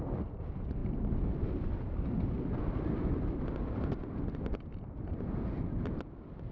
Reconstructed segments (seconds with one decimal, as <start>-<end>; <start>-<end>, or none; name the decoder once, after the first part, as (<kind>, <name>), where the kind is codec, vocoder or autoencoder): none